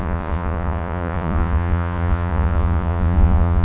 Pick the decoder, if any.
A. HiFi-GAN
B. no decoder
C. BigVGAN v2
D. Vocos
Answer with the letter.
D